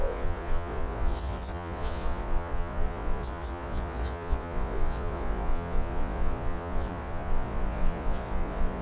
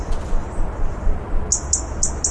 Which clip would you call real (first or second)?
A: second